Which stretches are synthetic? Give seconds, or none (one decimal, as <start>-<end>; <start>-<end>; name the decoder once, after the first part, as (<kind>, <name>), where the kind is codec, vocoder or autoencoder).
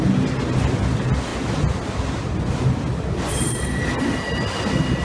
none